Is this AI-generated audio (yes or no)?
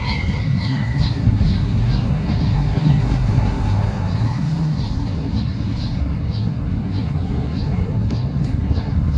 yes